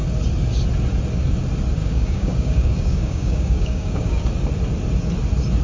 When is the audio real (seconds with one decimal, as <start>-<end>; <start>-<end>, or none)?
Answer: 0.0-1.8; 4.2-5.6

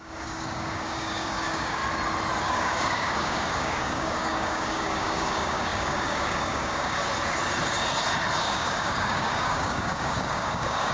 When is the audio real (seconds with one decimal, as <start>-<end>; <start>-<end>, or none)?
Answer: 1.8-2.4; 7.0-8.4

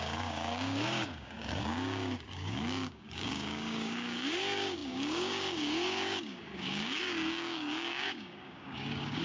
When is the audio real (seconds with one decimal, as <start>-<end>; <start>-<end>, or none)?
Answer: none

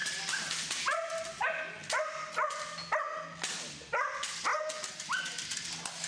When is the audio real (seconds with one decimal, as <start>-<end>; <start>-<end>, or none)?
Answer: 0.0-6.1

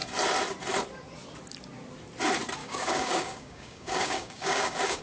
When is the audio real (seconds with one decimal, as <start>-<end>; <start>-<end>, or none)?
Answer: 0.0-2.6

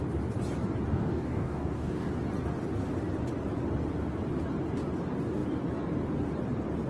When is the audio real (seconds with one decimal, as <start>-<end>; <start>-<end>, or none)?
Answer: 0.0-0.9; 2.1-6.9

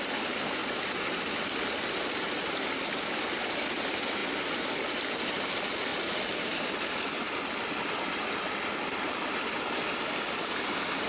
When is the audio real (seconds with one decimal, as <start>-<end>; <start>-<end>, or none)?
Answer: 0.0-11.1

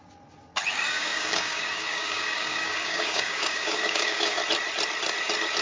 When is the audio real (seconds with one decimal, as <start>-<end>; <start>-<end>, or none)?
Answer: 0.0-0.7; 4.4-5.6